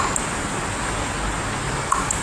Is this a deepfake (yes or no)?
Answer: no